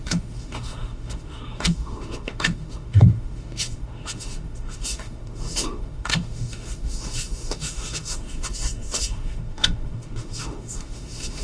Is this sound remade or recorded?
remade